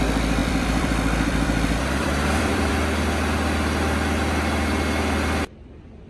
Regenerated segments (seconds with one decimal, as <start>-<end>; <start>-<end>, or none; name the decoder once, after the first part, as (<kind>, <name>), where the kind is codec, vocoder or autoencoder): 0.4-2.7 (vocoder, BigVGAN v2)